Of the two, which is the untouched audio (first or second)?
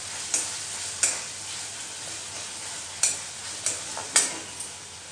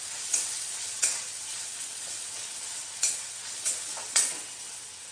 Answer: first